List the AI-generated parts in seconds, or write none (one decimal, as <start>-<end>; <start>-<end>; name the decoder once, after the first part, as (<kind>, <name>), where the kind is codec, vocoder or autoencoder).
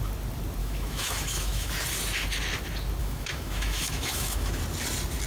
0.6-1.7 (autoencoder, DAC-VAE); 3.0-4.6